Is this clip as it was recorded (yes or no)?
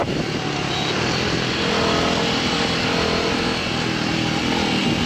yes